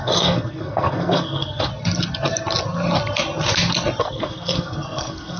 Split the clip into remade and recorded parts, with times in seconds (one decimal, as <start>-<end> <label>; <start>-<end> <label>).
0.0-1.7 remade; 1.7-4.0 recorded; 4.0-5.4 remade